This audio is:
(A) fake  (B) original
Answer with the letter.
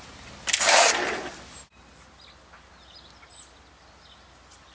B